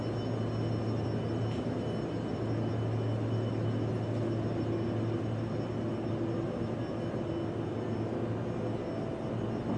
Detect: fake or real real